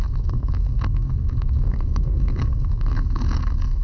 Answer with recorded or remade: remade